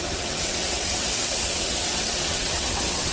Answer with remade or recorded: remade